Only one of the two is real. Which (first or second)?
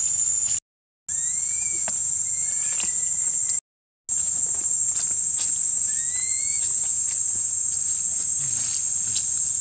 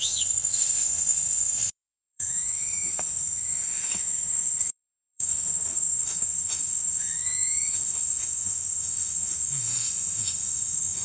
first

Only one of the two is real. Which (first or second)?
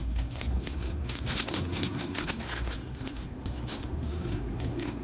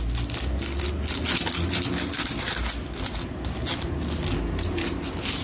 second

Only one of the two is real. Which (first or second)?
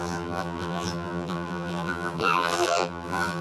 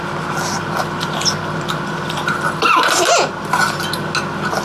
second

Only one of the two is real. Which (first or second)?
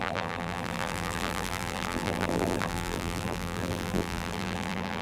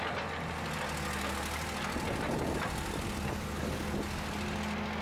second